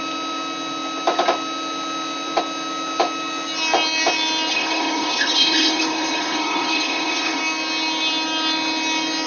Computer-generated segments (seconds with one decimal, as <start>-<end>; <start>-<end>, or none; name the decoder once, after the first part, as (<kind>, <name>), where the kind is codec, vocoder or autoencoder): 4.5-7.4 (codec, HILCodec)